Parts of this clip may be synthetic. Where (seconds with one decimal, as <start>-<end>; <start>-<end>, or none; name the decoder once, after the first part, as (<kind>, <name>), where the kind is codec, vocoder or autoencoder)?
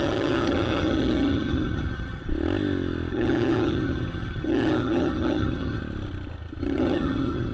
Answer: 0.0-2.3 (vocoder, HiFi-GAN); 3.1-5.8; 6.6-7.5